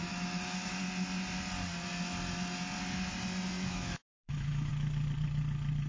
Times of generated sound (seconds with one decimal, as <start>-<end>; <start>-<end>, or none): 0.0-0.8; 3.7-4.7